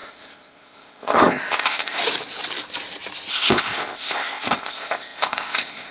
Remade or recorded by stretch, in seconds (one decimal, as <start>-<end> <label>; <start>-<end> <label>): 0.0-2.0 remade; 2.0-3.3 recorded; 3.3-5.9 remade